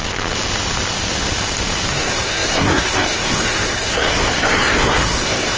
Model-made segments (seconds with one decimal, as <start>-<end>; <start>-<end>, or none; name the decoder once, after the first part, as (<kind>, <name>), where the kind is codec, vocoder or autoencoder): 1.9-5.6 (codec, SNAC)